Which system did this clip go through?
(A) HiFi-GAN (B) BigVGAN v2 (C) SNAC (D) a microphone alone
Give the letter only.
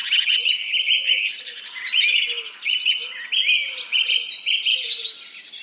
D